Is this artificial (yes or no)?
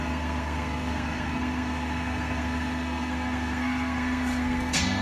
yes